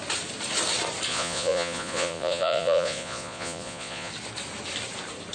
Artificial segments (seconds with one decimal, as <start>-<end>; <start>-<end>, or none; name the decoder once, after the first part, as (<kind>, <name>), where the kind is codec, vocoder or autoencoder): 1.1-4.1 (vocoder, Vocos)